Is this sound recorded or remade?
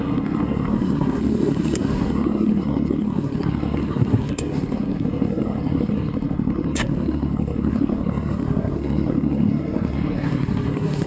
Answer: remade